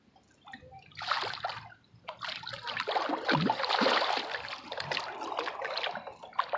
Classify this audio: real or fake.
real